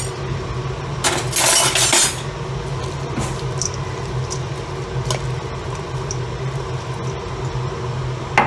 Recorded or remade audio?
recorded